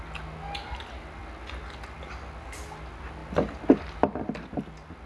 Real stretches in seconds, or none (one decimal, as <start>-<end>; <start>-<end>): 0.0-5.1